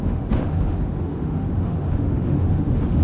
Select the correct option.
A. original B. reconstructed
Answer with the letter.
B